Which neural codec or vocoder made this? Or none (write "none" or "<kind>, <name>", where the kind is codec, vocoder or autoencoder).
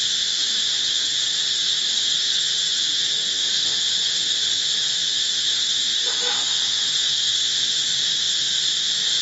autoencoder, DAC-VAE